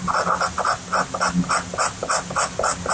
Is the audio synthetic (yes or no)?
no